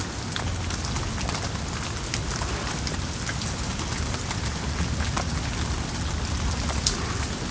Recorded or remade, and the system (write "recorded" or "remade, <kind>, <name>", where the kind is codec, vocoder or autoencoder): recorded